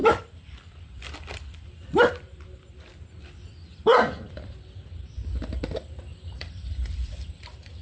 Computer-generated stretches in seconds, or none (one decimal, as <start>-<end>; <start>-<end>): 0.0-2.4; 3.9-5.2; 6.1-7.8